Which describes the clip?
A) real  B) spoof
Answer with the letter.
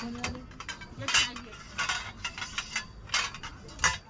A